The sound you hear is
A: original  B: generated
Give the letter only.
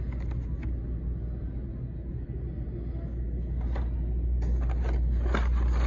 A